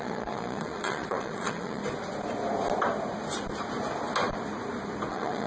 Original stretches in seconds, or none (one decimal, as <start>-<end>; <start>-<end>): 1.8-5.1